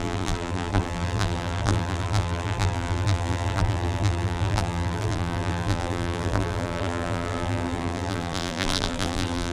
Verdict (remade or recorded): remade